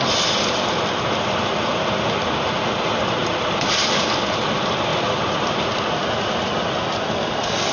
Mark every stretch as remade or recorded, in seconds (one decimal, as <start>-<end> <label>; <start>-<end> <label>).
0.0-7.7 recorded